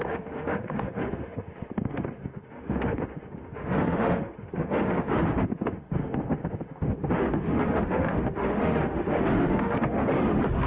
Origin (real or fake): fake